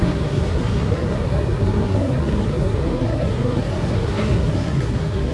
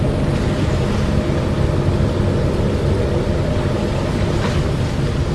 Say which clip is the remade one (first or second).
first